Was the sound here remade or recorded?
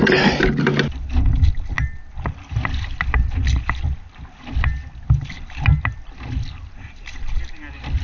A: recorded